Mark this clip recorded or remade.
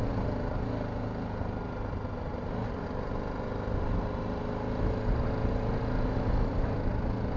recorded